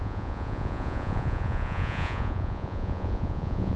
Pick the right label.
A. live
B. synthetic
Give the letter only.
B